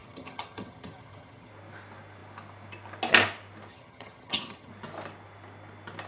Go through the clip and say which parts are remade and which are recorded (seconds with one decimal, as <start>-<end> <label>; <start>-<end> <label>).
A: 0.0-1.5 remade; 1.5-3.7 recorded; 3.7-4.7 remade; 4.7-6.1 recorded